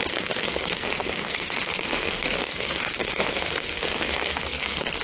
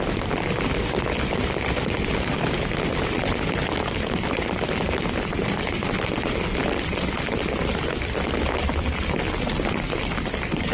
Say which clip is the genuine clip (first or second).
second